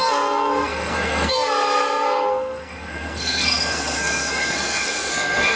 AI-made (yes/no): yes